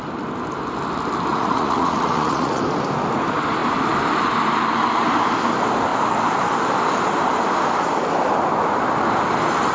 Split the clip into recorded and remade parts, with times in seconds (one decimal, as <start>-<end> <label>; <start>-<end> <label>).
0.0-1.3 recorded; 1.3-2.6 remade; 2.6-9.7 recorded